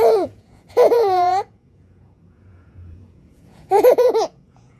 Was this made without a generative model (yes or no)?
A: no